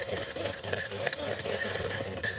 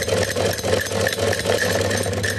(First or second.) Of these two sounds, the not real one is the first